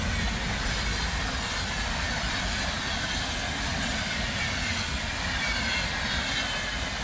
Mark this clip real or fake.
real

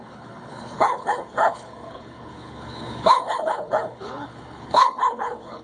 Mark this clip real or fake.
fake